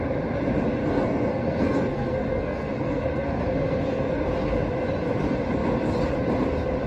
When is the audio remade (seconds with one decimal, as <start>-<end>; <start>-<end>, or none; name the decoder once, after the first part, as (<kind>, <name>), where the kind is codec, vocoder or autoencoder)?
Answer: 0.8-4.2 (codec, SNAC)